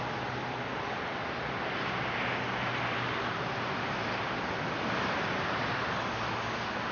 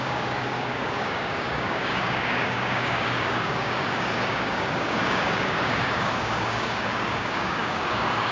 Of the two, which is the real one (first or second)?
first